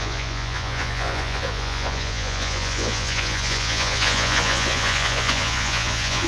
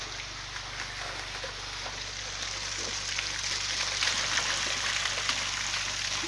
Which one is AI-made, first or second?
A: first